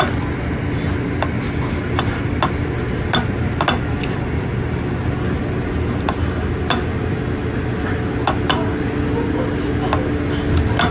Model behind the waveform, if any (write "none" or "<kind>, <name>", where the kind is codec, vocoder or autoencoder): none